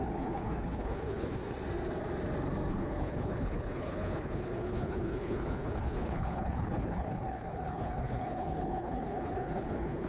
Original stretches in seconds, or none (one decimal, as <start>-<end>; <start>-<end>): 1.4-2.7